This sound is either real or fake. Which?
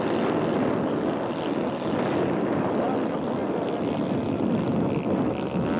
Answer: real